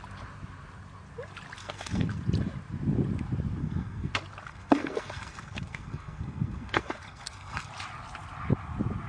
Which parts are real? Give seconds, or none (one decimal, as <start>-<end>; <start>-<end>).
0.0-1.6; 2.2-3.6; 4.1-4.5; 7.7-9.1